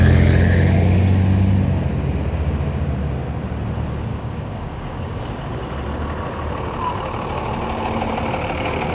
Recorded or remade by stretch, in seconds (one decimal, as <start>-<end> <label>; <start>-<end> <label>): 0.0-4.1 recorded; 4.1-5.2 remade; 5.2-8.9 recorded

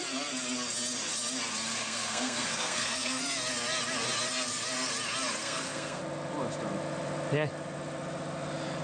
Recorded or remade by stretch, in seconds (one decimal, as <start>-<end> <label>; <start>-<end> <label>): 0.0-1.7 recorded; 1.7-3.2 remade; 3.2-5.4 recorded; 5.4-6.0 remade; 6.0-8.8 recorded

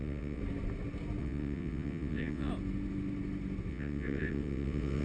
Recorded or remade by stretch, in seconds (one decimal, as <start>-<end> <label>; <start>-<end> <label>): 0.0-0.4 remade; 0.4-1.2 recorded; 1.2-2.5 remade; 2.5-3.7 recorded; 3.7-5.0 remade

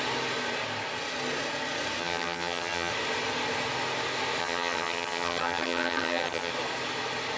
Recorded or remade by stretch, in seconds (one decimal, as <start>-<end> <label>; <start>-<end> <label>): 0.0-2.0 recorded; 2.0-2.9 remade; 2.9-4.4 recorded; 4.4-6.5 remade; 6.5-7.4 recorded

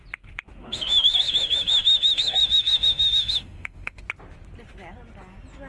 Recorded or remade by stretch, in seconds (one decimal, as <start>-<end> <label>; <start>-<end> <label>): 0.0-0.6 recorded; 0.6-4.0 remade; 4.0-5.7 recorded

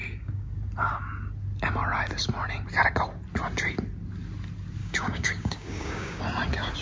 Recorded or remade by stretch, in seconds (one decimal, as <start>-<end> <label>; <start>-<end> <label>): 0.0-0.5 remade; 0.5-4.8 recorded; 4.8-6.2 remade; 6.2-6.8 recorded

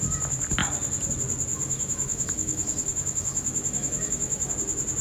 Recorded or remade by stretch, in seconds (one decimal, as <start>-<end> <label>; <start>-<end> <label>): 0.0-1.5 recorded; 1.5-4.5 remade; 4.5-5.0 recorded

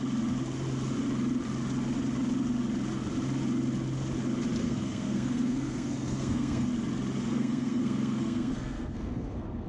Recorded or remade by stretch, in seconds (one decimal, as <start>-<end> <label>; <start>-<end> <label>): 0.0-4.6 recorded; 4.6-6.7 remade; 6.7-7.3 recorded; 7.3-9.7 remade